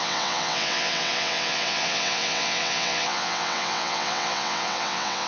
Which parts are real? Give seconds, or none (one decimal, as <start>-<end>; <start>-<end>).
none